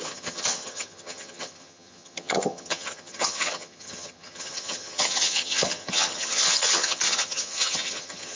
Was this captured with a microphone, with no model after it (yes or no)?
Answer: no